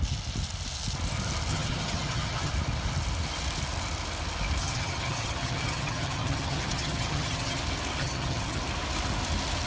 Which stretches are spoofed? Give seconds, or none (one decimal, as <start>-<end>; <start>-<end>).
1.5-2.5; 4.6-7.6; 8.0-8.6